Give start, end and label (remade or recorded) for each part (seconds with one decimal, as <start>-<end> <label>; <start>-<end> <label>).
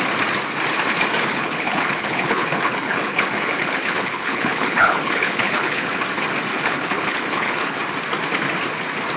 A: 0.0-1.3 recorded; 1.3-6.0 remade; 6.0-6.5 recorded; 6.5-7.8 remade; 7.8-9.2 recorded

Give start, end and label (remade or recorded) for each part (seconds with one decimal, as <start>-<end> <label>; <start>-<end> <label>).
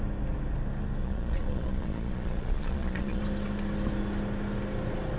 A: 0.0-1.0 recorded; 1.0-3.2 remade; 3.2-5.2 recorded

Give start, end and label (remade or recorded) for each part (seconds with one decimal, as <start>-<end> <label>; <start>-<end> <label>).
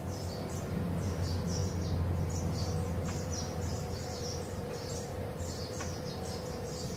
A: 0.0-7.0 recorded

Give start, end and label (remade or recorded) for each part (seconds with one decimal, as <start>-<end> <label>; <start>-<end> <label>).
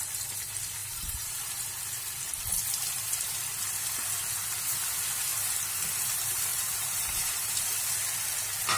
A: 0.0-0.8 recorded; 0.8-1.5 remade; 1.5-6.5 recorded; 6.5-7.8 remade; 7.8-8.8 recorded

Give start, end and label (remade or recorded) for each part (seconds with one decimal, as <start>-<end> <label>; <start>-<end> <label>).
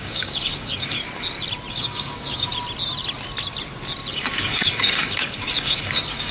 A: 0.0-1.0 remade; 1.0-1.7 recorded; 1.7-2.5 remade; 2.5-4.1 recorded; 4.1-6.3 remade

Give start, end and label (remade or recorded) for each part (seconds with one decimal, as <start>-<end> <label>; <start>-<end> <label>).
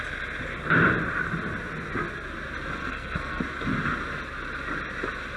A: 0.0-2.8 recorded; 2.8-3.4 remade; 3.4-5.4 recorded